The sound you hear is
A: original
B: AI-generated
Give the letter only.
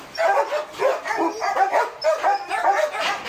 A